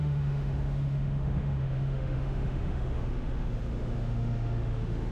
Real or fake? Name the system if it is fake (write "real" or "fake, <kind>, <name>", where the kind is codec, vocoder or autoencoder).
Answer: fake, autoencoder, DAC-VAE